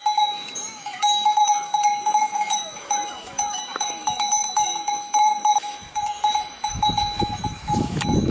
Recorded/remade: remade